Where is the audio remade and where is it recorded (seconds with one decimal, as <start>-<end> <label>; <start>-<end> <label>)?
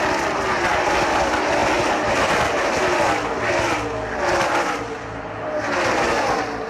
0.0-6.7 recorded